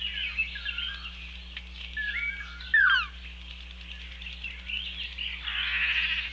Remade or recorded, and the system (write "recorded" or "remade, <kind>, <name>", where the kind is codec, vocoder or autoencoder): recorded